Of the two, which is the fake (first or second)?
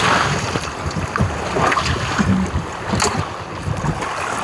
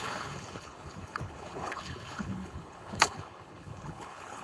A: second